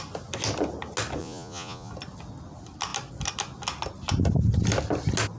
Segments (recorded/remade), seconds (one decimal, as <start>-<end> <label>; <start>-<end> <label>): 0.0-1.2 recorded; 1.2-1.9 remade; 1.9-5.4 recorded